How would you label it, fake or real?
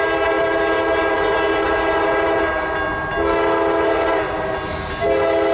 real